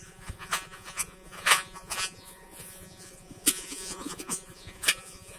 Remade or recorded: remade